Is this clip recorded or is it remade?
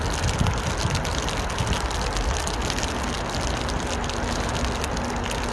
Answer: recorded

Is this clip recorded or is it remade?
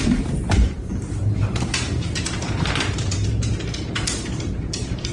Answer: remade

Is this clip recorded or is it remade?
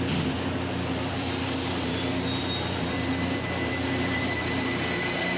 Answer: remade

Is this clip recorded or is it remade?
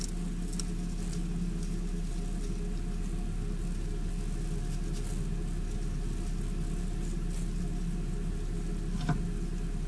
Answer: recorded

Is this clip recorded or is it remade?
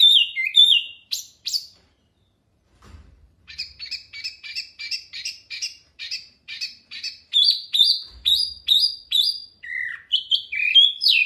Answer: remade